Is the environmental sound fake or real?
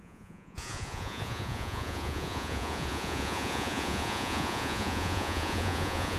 fake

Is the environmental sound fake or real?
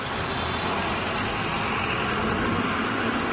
real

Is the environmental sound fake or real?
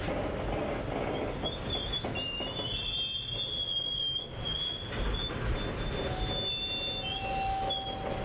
real